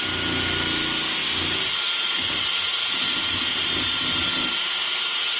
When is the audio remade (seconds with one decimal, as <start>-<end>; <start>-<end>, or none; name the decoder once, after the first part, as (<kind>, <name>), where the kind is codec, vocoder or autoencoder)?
none